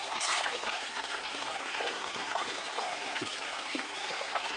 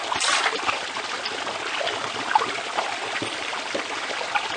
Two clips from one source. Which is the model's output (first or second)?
first